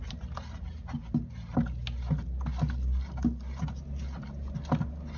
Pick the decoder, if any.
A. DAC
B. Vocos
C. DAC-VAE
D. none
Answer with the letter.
D